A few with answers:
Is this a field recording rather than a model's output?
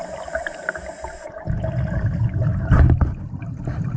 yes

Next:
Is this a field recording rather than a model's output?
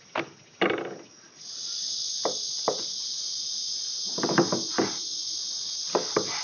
yes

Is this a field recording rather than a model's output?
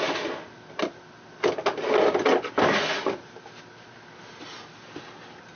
yes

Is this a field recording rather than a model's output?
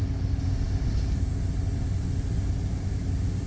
yes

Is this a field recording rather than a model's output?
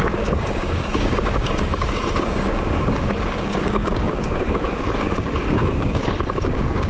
no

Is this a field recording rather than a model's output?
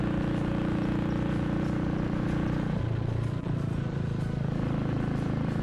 yes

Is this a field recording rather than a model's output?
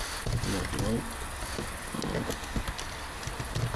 yes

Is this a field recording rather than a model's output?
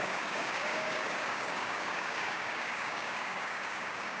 no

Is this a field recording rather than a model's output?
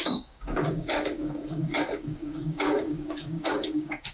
no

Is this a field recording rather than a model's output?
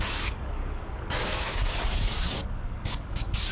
no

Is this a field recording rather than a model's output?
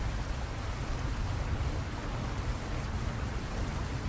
yes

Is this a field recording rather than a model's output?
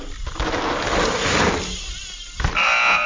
yes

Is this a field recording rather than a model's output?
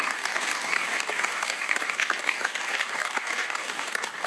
no